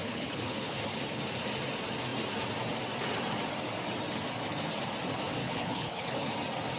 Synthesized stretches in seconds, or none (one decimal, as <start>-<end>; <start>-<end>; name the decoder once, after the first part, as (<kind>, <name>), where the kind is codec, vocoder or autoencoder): 0.0-0.8 (codec, HILCodec); 5.4-6.3